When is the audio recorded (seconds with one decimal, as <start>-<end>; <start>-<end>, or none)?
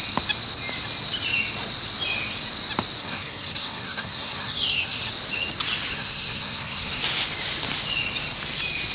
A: 0.0-3.0; 5.0-5.9; 7.0-8.9